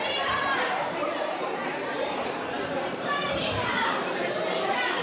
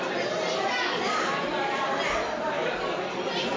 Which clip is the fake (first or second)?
first